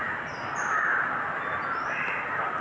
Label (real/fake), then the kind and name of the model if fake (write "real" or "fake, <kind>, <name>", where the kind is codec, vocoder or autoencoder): real